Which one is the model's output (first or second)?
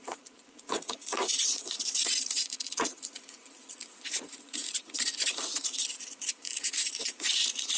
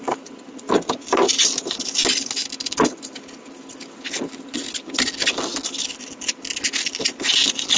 first